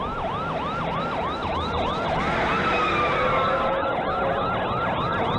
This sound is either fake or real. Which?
real